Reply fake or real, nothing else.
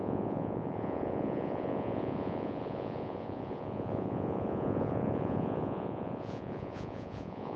fake